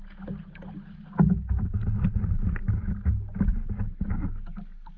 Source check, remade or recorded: recorded